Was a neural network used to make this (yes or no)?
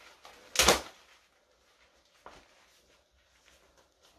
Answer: no